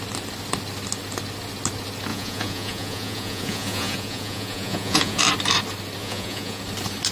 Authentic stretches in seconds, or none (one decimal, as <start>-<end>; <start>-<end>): 0.0-2.1; 5.2-6.0; 6.6-7.1